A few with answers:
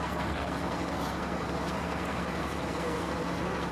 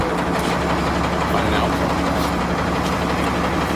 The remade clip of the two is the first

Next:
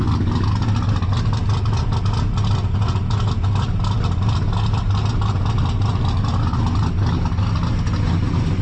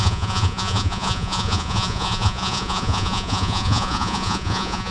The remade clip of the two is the second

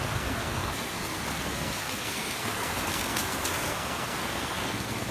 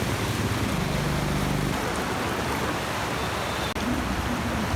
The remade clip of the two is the first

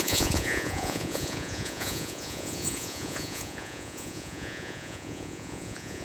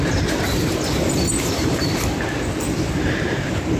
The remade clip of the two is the first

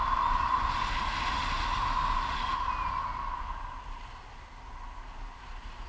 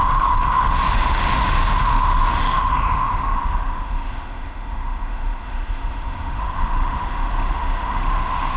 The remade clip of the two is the second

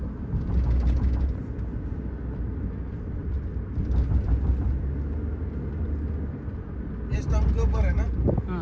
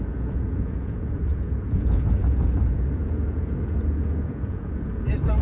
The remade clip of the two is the second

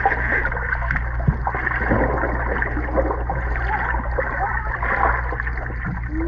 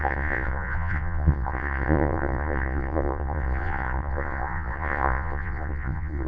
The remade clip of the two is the second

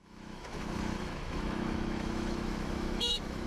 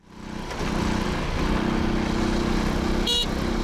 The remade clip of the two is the first